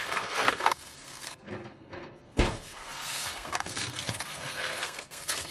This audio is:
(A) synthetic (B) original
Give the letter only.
A